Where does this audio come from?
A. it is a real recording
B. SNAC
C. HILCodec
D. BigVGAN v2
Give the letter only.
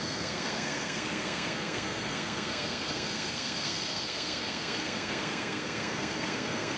B